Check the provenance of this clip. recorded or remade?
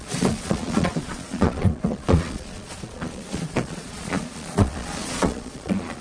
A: remade